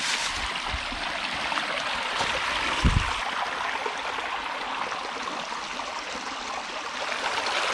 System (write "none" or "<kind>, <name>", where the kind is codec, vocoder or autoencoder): none